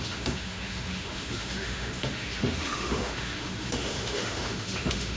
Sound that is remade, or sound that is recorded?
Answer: remade